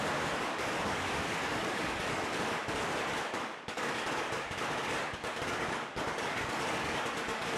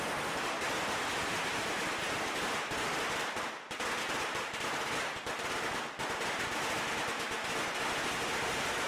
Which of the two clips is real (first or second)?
second